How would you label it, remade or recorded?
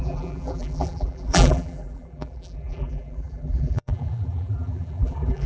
remade